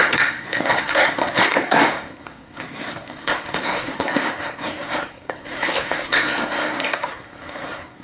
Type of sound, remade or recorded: remade